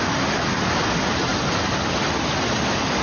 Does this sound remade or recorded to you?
recorded